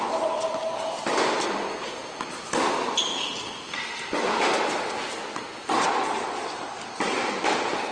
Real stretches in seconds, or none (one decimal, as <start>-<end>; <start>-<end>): 0.0-7.9